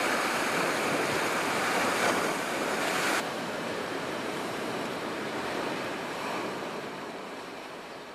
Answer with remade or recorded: remade